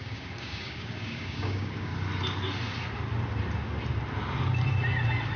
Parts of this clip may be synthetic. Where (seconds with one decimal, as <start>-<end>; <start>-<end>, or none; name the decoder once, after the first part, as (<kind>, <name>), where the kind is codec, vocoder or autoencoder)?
0.0-1.9 (codec, DAC)